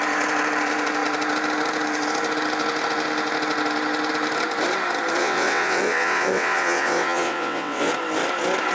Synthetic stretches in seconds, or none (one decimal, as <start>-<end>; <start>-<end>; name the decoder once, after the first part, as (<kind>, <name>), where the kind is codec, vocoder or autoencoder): 5.2-7.9 (vocoder, WaveNeXt)